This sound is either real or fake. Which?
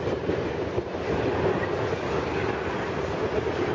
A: real